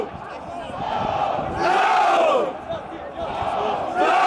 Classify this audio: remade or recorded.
recorded